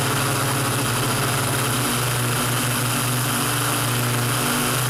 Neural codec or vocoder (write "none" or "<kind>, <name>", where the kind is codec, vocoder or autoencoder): none